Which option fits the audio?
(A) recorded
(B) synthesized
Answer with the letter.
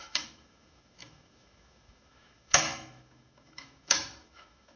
B